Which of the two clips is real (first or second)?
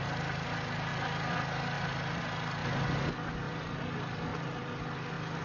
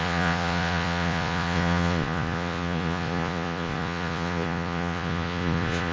first